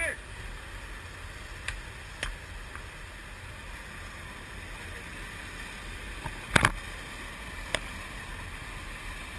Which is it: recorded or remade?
recorded